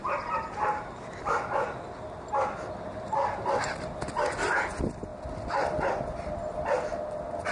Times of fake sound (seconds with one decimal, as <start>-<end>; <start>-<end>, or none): none